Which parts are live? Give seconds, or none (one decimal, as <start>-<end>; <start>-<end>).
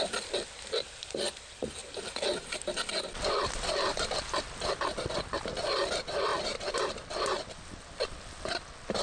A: 0.0-9.0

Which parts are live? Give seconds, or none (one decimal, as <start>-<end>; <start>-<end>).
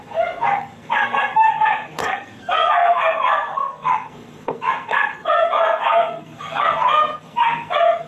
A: none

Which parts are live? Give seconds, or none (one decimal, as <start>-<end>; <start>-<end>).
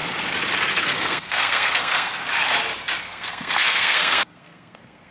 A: 0.0-0.8; 2.2-3.0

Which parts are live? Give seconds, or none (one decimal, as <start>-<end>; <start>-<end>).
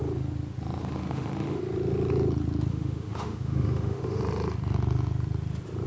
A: 0.0-0.8; 1.6-2.7; 4.2-5.9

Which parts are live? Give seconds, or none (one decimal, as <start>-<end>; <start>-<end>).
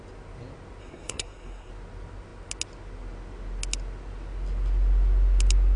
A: 0.0-0.8; 1.7-5.8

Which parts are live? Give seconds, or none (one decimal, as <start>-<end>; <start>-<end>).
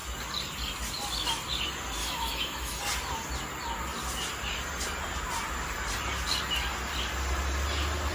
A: 0.0-2.0; 2.8-8.1